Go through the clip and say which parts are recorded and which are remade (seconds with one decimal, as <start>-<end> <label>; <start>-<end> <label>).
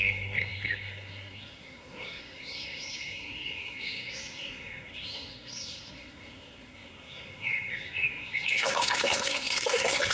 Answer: 0.0-10.1 remade